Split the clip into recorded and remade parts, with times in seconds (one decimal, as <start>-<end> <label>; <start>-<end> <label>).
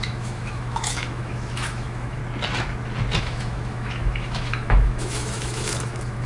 0.0-2.2 remade; 2.2-3.2 recorded; 3.2-6.3 remade